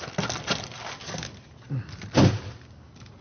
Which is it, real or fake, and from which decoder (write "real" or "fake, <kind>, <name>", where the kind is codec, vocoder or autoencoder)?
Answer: real